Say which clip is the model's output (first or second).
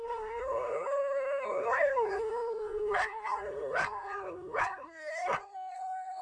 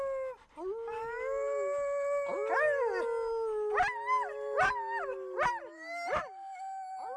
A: first